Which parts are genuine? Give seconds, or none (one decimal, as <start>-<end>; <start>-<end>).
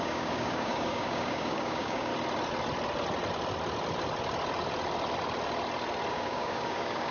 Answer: 2.1-6.1